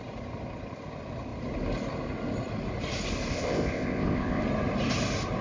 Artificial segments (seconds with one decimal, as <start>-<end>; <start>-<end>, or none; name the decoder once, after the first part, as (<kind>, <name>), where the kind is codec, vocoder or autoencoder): 3.3-4.4 (codec, ZipCodec)